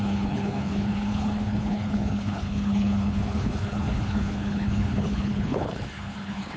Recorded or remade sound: remade